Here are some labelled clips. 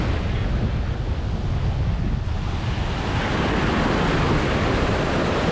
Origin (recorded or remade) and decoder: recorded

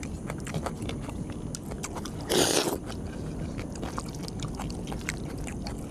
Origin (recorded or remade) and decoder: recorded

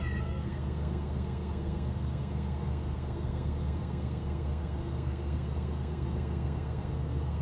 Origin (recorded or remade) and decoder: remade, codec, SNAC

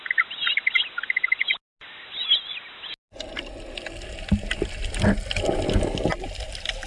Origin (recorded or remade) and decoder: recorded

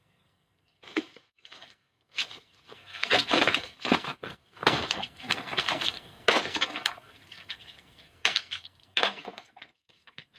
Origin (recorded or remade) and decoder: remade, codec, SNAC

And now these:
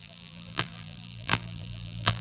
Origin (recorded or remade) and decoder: remade, vocoder, BigVGAN v2